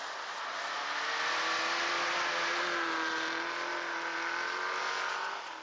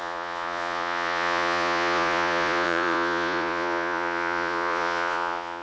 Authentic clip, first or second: first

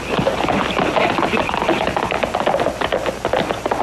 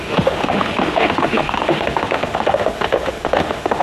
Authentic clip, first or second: first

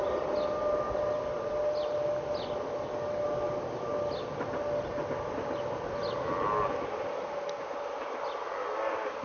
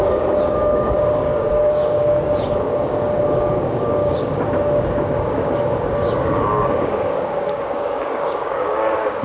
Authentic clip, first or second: first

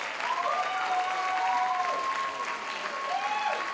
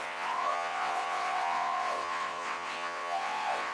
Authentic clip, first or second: first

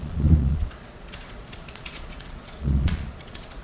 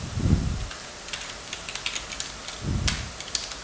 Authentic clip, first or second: second